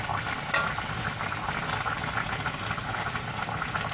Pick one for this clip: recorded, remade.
recorded